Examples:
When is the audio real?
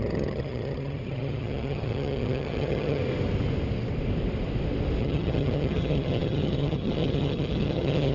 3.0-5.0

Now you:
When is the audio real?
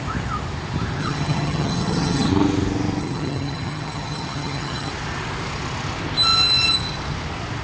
0.0-1.0; 2.3-3.0; 4.9-7.6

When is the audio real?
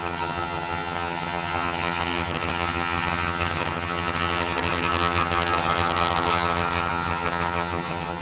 none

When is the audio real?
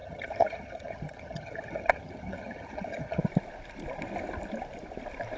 3.2-5.4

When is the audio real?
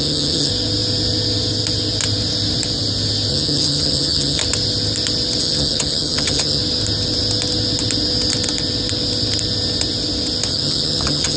0.5-3.3; 4.4-5.4; 6.6-10.5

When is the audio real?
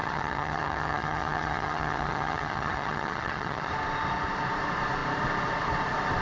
3.7-6.2